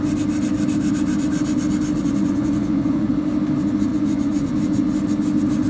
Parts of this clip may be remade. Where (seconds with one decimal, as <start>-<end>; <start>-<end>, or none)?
2.0-3.1; 3.9-4.5